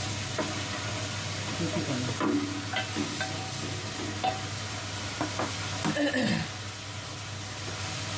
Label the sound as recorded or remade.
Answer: recorded